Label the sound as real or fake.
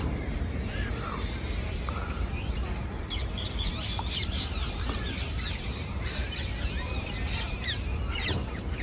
fake